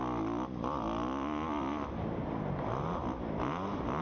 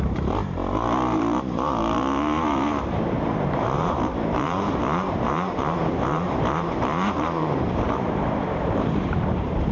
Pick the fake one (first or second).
second